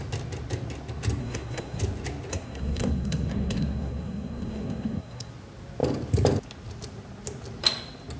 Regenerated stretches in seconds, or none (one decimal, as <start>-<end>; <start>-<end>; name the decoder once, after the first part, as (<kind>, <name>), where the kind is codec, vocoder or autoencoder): 1.2-1.8 (codec, SNAC); 2.3-5.3